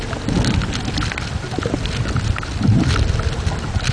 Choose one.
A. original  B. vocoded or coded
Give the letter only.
A